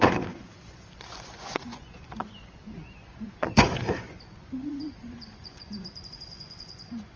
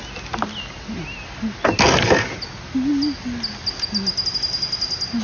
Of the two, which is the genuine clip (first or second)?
second